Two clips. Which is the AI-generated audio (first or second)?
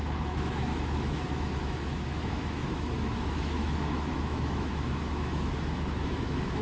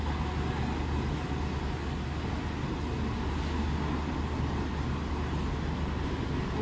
first